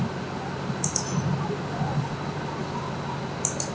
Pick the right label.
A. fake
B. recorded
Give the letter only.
B